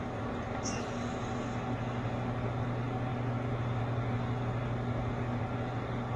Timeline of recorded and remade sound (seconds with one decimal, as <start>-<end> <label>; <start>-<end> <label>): 0.0-6.2 recorded